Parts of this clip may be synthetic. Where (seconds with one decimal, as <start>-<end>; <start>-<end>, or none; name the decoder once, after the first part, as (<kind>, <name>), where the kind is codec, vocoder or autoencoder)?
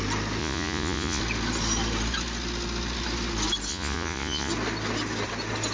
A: 0.4-1.2 (vocoder, Vocos); 3.7-4.5